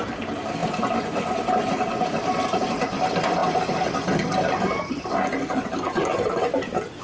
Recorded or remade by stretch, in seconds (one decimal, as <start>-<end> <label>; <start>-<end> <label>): 0.0-7.0 recorded